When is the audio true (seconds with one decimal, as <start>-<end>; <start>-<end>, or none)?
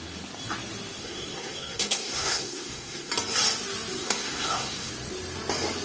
0.0-1.0; 3.1-4.0; 4.9-5.8